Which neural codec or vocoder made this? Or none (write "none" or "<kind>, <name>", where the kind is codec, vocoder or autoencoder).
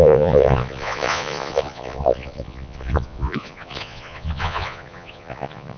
vocoder, Vocos